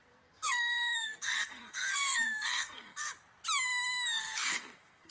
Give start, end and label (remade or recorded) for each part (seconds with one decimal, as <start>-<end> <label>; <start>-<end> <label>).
0.0-3.1 remade; 3.1-4.2 recorded; 4.2-5.1 remade